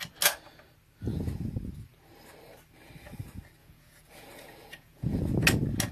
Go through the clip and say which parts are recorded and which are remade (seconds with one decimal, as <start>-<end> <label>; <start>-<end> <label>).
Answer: 0.0-3.6 recorded; 3.6-5.2 remade; 5.2-5.9 recorded